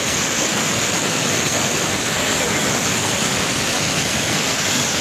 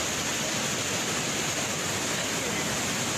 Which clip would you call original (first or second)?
second